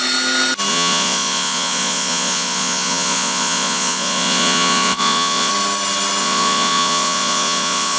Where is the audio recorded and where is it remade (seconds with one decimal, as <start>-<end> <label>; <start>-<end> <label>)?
0.0-0.7 recorded; 0.7-5.5 remade; 5.5-6.2 recorded; 6.2-8.0 remade